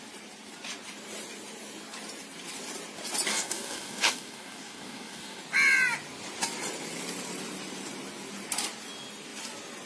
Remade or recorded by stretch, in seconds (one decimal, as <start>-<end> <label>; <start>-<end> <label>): 0.0-3.3 recorded; 3.3-5.4 remade; 5.4-9.9 recorded